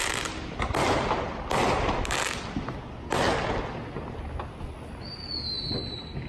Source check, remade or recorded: recorded